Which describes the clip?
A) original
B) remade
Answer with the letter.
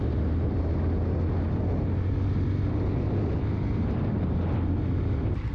A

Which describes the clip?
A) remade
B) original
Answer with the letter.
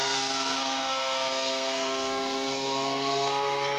A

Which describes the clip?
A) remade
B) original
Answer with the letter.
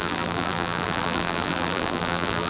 A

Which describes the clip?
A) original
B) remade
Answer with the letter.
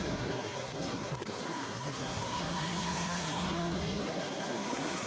B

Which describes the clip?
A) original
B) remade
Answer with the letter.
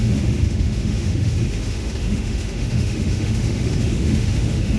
B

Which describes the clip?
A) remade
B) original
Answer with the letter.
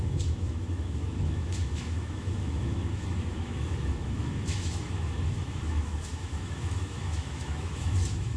A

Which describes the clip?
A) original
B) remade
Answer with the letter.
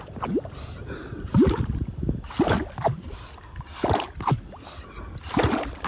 A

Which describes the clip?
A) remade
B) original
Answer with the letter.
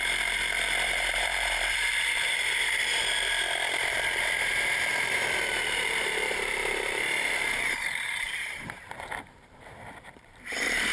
A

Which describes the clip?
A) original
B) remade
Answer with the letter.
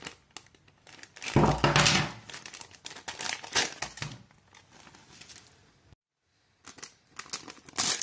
A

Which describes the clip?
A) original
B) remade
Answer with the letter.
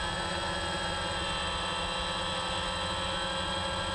A